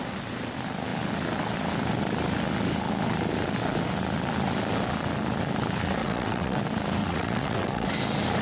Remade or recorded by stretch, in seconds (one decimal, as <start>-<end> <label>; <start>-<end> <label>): 0.0-6.0 recorded; 6.0-6.6 remade; 6.6-7.0 recorded; 7.0-7.9 remade; 7.9-8.4 recorded

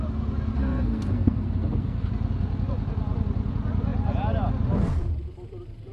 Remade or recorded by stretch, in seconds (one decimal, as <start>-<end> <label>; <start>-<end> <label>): 0.0-0.5 recorded; 0.5-2.1 remade; 2.1-5.9 recorded

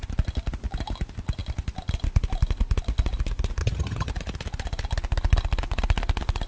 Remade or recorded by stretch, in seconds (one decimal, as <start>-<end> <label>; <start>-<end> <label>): 0.0-3.6 recorded; 3.6-4.1 remade; 4.1-6.5 recorded